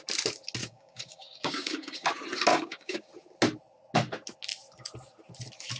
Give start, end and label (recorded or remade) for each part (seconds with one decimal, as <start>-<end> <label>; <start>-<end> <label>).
0.0-0.6 recorded; 0.6-2.1 remade; 2.1-2.5 recorded; 2.5-3.1 remade; 3.1-5.8 recorded